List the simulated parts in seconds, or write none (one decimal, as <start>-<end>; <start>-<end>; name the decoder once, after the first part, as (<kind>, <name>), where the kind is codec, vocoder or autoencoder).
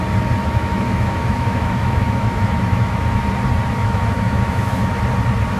0.4-3.2 (autoencoder, DAC-VAE); 3.8-5.0